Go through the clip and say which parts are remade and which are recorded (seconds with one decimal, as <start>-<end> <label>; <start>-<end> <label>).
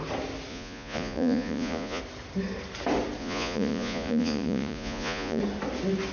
0.0-0.5 recorded; 0.5-2.0 remade; 2.0-3.2 recorded; 3.2-5.4 remade; 5.4-6.1 recorded